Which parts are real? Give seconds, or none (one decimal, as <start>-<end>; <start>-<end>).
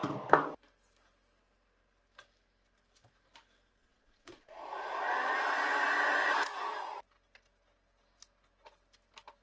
0.0-3.8; 5.0-9.4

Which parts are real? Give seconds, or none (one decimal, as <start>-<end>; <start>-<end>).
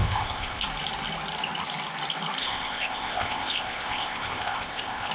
0.6-2.4